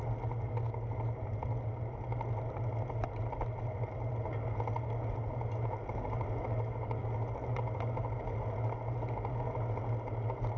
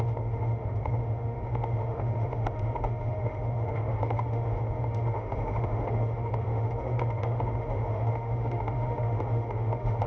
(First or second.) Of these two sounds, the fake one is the second